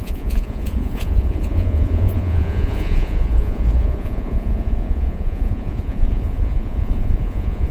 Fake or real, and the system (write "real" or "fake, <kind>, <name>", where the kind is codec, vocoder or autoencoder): fake, vocoder, Vocos